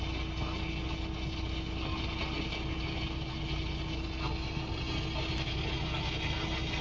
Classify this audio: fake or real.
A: real